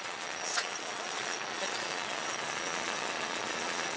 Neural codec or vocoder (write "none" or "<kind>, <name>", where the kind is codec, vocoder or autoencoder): vocoder, Vocos